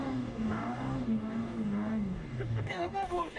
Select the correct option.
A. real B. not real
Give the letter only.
B